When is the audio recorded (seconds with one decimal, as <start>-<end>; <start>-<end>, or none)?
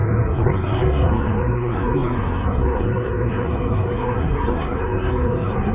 none